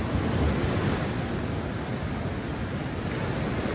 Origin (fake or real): real